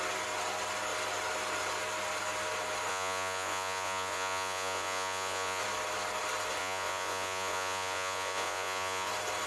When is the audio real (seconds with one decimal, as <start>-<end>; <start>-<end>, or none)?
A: 0.0-2.9; 5.6-6.6; 9.1-9.5